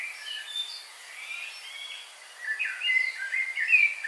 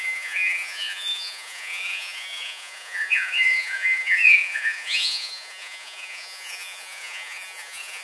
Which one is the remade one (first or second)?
second